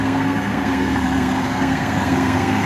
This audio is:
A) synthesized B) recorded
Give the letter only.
A